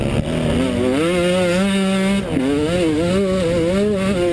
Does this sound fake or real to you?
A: real